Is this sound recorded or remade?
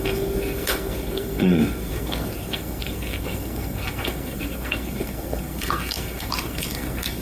remade